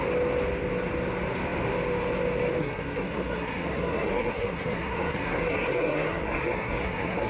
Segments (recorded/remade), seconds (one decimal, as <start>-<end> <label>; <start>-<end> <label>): 0.0-2.6 recorded; 2.6-7.3 remade